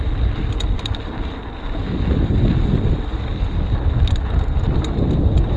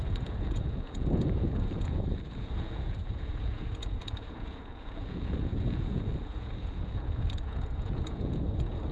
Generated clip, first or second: second